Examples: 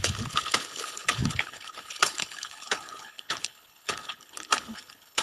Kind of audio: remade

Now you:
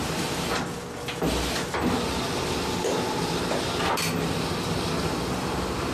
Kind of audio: recorded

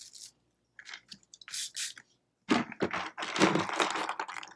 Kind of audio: recorded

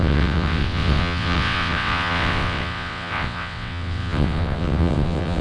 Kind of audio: remade